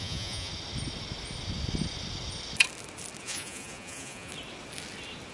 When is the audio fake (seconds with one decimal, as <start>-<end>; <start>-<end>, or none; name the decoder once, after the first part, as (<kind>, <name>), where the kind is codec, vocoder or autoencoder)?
0.0-0.5 (vocoder, Vocos); 3.2-4.3